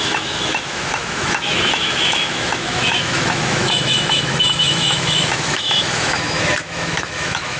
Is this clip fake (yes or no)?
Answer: yes